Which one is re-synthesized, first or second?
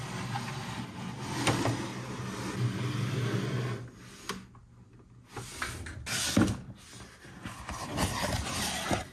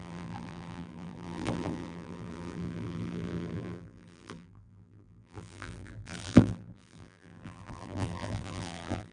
second